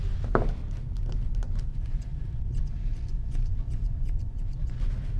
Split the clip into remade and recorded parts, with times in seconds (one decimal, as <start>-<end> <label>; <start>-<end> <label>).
0.0-1.7 recorded; 1.7-4.8 remade; 4.8-5.2 recorded